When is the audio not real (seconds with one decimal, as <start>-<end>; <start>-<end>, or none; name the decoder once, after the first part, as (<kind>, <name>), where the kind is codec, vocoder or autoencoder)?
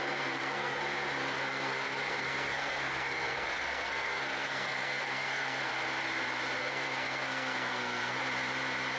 0.0-0.8 (codec, SNAC); 1.4-5.7; 6.6-8.2